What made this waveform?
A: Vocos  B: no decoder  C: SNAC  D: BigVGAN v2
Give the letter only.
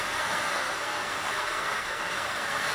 C